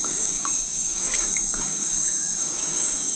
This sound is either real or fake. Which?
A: fake